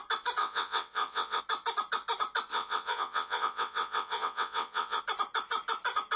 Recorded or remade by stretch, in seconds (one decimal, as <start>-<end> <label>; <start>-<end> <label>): 0.0-0.4 recorded; 0.4-1.4 remade; 1.4-2.5 recorded; 2.5-5.0 remade; 5.0-6.2 recorded